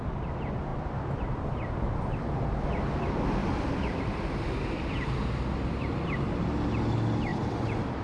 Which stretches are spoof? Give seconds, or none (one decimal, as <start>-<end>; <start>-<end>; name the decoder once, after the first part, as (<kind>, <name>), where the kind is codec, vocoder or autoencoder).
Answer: 0.7-2.8 (vocoder, BigVGAN v2); 3.4-5.2; 7.3-8.0